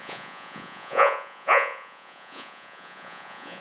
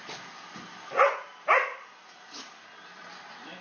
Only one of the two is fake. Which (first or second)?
first